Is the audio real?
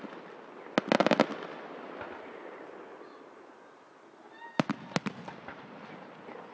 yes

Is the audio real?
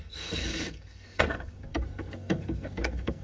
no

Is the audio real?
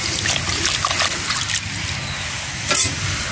yes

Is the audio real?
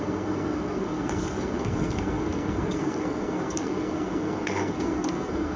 no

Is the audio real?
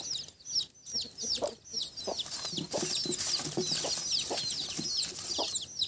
yes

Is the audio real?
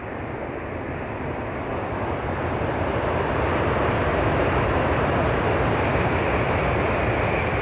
yes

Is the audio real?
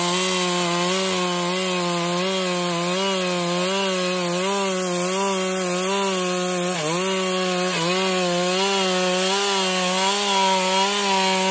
yes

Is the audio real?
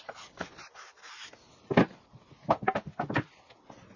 yes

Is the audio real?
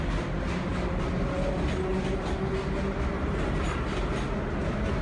yes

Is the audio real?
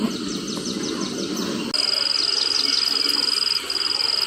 yes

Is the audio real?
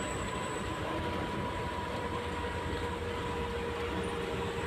yes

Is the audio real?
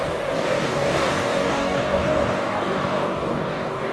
no